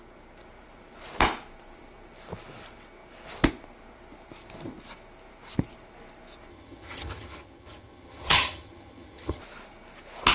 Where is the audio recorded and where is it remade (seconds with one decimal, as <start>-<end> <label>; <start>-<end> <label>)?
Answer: 0.0-6.5 recorded; 6.5-9.4 remade; 9.4-10.3 recorded